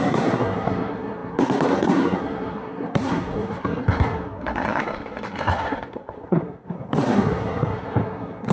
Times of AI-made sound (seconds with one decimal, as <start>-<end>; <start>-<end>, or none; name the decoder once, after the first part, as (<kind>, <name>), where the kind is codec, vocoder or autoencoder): 0.0-8.5 (codec, SNAC)

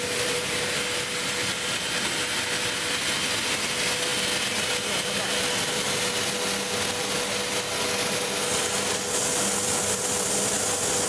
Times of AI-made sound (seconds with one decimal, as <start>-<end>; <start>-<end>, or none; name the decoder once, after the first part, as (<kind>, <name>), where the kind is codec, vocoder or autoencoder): none